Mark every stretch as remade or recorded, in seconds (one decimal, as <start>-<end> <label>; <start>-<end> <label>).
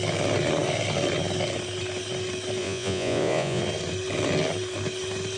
0.0-2.6 recorded; 2.6-3.6 remade; 3.6-5.4 recorded